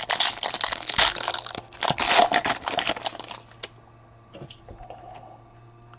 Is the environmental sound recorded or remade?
recorded